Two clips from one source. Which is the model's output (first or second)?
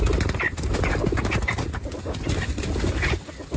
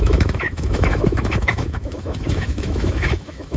second